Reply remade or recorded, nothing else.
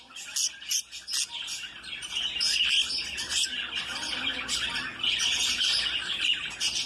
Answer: recorded